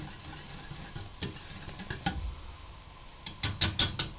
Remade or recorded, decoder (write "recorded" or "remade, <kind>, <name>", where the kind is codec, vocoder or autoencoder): recorded